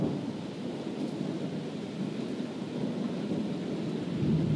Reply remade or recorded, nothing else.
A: recorded